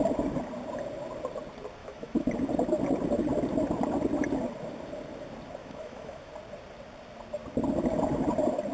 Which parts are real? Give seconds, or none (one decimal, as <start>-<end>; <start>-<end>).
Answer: 0.0-1.8; 2.3-5.6; 6.3-8.7